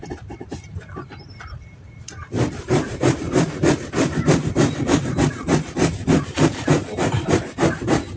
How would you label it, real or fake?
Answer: fake